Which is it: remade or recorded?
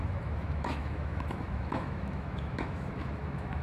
remade